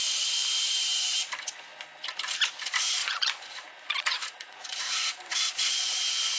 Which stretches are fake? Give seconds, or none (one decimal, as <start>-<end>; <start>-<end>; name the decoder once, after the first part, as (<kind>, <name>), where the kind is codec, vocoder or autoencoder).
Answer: 3.0-6.0 (vocoder, Vocos)